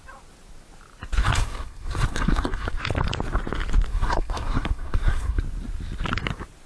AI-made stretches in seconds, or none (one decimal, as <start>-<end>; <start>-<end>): 1.2-2.8; 3.9-5.4

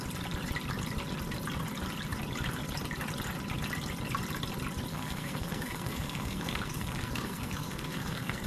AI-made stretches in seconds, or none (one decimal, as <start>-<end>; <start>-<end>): 4.9-8.5

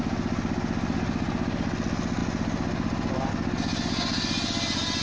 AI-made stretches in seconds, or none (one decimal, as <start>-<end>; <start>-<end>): none